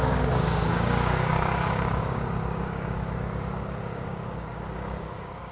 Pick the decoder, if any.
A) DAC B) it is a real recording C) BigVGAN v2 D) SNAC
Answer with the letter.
A